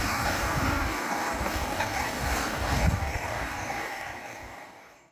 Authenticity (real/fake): fake